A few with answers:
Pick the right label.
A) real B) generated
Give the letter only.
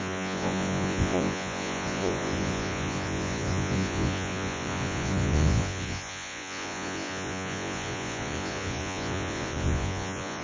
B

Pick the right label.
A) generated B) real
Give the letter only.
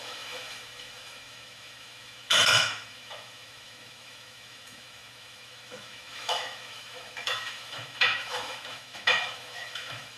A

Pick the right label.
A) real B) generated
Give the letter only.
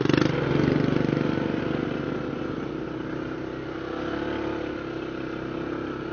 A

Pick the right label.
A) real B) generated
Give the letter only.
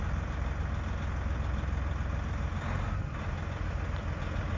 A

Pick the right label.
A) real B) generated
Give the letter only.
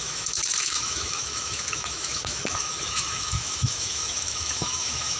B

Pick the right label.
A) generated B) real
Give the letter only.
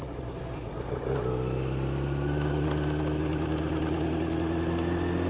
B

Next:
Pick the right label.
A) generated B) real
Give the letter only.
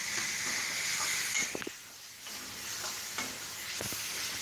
B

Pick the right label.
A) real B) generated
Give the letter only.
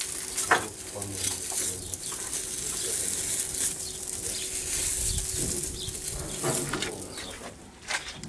A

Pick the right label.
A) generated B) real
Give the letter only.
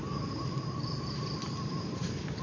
A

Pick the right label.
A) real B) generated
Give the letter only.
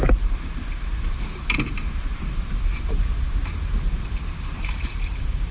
B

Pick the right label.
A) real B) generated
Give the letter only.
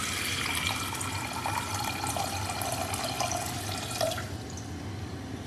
A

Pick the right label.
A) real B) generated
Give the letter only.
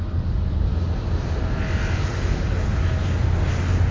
A